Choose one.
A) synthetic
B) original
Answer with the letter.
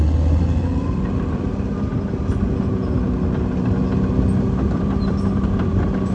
B